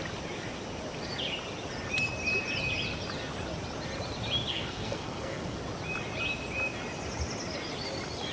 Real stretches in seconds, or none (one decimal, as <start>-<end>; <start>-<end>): 0.0-4.5; 5.6-8.3